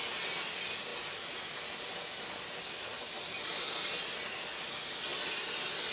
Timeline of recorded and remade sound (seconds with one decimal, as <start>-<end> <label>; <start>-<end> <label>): 0.0-5.9 recorded